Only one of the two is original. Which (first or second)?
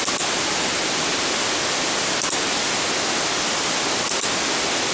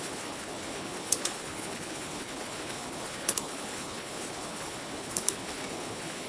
first